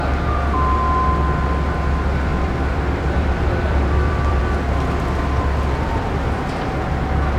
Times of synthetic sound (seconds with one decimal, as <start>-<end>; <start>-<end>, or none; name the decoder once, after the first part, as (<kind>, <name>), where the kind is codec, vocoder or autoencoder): 2.3-4.4 (vocoder, BigVGAN v2)